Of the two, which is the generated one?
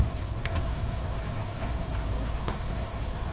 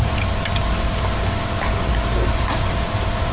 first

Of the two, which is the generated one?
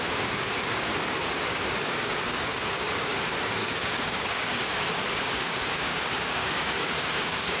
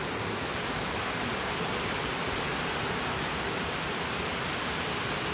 first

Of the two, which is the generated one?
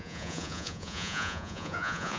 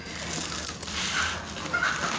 first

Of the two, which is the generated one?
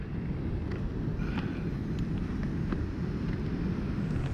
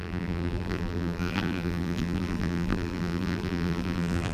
second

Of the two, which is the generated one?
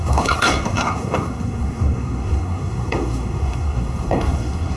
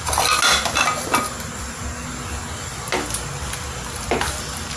first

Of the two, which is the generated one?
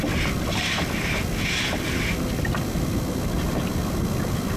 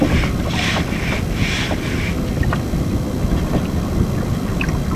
second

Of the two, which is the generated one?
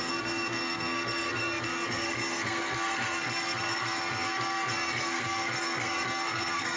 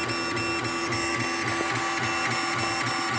first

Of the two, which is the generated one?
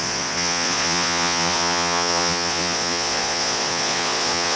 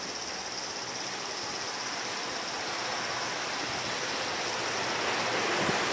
first